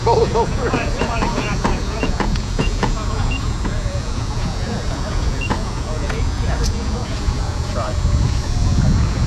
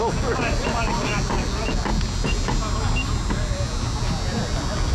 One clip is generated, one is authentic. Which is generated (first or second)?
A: first